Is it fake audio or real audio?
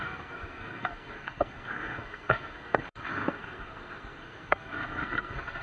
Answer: fake